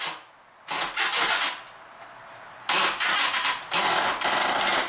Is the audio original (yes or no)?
yes